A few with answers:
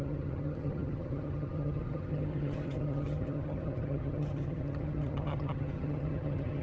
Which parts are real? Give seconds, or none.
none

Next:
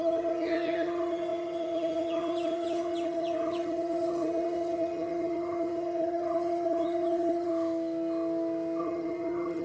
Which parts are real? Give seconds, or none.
7.5-8.8

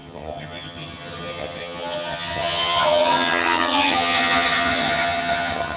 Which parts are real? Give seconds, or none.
none

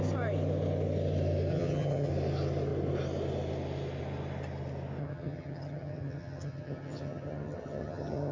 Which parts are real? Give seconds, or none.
0.0-1.5; 2.1-5.0

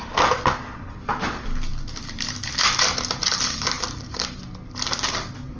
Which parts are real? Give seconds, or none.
0.0-5.6